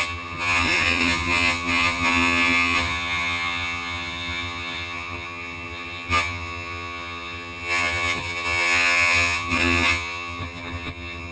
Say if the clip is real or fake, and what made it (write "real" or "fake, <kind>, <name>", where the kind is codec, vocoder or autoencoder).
fake, vocoder, HiFi-GAN